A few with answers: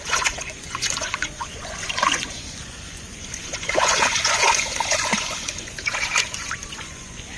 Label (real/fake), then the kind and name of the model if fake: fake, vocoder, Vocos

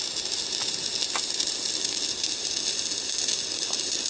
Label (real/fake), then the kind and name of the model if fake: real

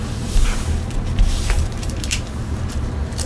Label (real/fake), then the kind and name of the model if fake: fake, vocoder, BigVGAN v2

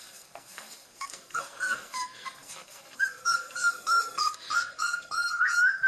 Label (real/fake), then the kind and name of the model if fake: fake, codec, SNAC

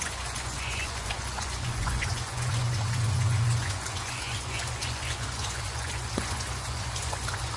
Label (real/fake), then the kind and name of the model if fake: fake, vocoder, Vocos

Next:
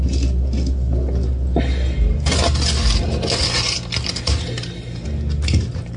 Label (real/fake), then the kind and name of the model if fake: real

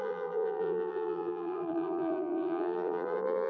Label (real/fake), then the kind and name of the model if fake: fake, vocoder, BigVGAN v2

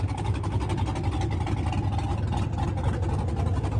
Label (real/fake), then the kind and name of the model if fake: real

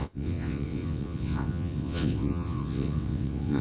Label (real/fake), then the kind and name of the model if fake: fake, vocoder, WaveNeXt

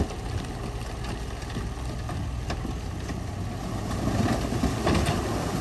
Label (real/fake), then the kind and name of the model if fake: real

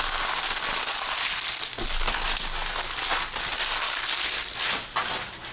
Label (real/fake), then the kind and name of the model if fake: real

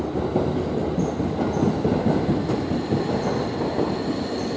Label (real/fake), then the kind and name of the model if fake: real